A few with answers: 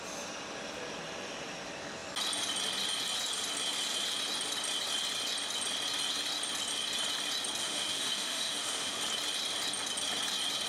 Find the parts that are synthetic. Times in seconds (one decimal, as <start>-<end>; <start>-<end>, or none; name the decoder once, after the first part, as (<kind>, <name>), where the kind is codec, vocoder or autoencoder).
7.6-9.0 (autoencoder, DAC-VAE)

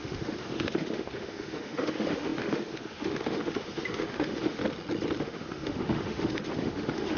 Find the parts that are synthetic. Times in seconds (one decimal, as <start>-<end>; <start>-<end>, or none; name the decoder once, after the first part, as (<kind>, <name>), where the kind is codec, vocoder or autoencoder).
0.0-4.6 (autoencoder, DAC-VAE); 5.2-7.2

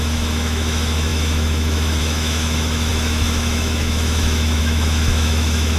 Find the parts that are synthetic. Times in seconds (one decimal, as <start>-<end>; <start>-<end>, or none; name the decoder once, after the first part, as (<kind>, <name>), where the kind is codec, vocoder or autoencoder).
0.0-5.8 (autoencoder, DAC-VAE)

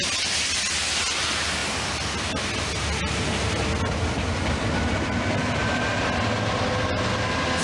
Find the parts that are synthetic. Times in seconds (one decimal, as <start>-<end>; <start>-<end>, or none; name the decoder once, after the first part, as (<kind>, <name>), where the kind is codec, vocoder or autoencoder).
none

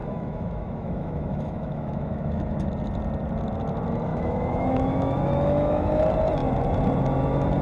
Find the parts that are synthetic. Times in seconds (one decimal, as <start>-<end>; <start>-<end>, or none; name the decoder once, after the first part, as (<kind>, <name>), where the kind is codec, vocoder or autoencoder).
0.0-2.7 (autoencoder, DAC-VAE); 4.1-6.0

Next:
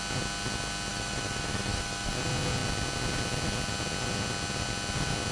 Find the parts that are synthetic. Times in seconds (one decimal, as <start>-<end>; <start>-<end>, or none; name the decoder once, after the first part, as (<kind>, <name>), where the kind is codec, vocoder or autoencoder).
0.9-2.1 (autoencoder, DAC-VAE)